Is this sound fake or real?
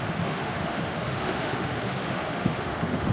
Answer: fake